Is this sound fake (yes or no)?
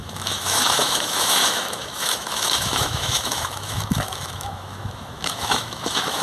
yes